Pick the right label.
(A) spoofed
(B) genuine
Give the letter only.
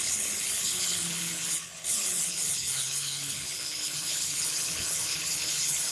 A